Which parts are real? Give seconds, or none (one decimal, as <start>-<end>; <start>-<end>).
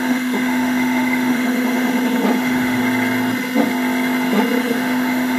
1.9-2.4; 2.8-4.6